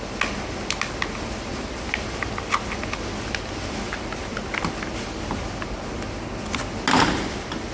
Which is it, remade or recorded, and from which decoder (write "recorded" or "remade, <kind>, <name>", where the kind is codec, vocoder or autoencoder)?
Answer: recorded